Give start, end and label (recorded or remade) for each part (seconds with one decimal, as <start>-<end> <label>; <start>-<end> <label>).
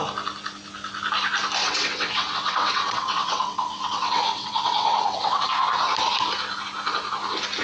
0.0-1.6 recorded; 1.6-5.5 remade; 5.5-7.6 recorded